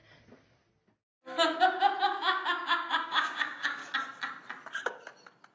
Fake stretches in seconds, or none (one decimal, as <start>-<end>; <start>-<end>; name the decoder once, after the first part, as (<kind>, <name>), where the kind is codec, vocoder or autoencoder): 2.0-3.8 (codec, DAC)